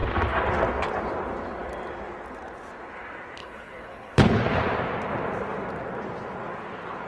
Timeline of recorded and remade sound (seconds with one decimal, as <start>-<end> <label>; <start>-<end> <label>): 0.0-3.4 recorded; 3.4-4.4 remade; 4.4-7.1 recorded